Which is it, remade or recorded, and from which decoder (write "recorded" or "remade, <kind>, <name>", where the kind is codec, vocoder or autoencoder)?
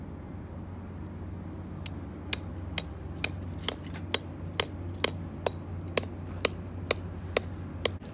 recorded